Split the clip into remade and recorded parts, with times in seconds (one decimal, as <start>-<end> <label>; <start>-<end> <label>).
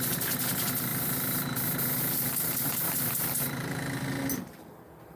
0.0-0.9 recorded; 0.9-4.0 remade; 4.0-5.2 recorded